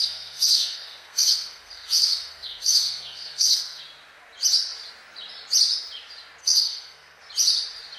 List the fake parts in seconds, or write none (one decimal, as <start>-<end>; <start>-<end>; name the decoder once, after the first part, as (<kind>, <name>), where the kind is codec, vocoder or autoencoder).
0.0-3.8 (codec, SNAC); 6.4-7.2